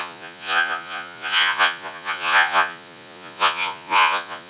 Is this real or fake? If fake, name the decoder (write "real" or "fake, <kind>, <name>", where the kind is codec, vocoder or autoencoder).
fake, vocoder, Vocos